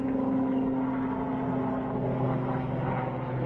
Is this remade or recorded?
recorded